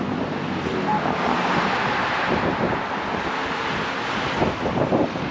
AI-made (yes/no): no